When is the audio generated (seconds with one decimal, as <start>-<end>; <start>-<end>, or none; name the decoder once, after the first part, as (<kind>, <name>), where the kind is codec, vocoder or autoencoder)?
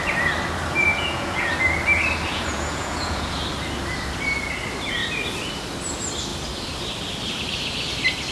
0.9-1.5 (vocoder, Vocos); 2.3-3.4